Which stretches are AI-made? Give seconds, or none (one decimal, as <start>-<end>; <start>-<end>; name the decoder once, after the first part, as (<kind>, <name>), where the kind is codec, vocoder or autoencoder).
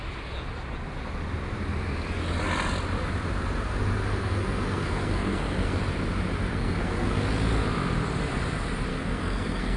4.2-5.8 (codec, SNAC); 6.5-7.2; 8.9-9.8